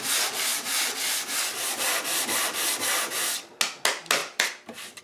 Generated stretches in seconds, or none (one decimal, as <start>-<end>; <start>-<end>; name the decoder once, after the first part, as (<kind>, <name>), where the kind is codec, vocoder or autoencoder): 4.2-5.0 (vocoder, BigVGAN v2)

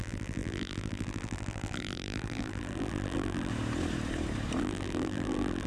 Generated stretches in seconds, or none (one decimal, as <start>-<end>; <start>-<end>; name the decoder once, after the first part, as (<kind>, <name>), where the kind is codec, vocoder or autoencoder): 0.0-3.5 (vocoder, BigVGAN v2); 4.6-5.7

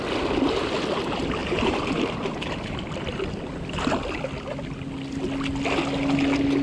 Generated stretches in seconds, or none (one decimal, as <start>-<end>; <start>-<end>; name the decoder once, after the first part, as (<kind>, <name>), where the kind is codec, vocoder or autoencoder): 1.4-2.8 (vocoder, BigVGAN v2)

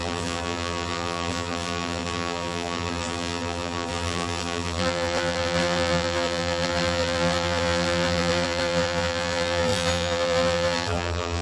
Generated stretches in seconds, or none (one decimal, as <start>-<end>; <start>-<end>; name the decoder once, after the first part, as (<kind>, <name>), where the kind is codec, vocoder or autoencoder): 0.0-11.4 (vocoder, BigVGAN v2)

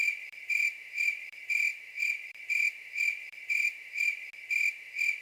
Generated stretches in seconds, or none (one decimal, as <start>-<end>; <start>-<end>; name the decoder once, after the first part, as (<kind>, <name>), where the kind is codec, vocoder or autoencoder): 0.0-4.3 (vocoder, BigVGAN v2)

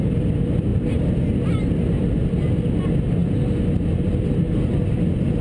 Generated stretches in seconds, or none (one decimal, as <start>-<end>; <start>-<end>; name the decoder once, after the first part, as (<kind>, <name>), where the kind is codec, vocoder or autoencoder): none

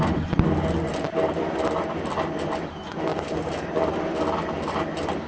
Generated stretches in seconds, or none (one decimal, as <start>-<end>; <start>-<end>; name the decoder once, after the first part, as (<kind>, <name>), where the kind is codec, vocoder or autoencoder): 3.1-3.9 (vocoder, BigVGAN v2)

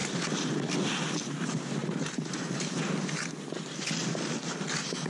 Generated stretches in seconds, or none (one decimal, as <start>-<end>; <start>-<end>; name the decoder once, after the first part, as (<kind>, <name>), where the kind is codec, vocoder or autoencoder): 0.0-0.6 (vocoder, BigVGAN v2); 1.8-2.4